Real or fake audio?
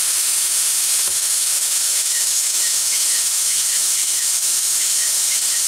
fake